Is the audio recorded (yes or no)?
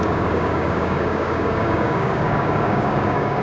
no